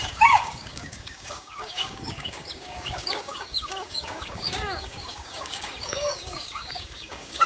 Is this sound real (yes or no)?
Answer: no